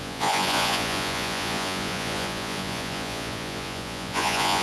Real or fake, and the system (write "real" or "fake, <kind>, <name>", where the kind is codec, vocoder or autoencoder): fake, vocoder, Vocos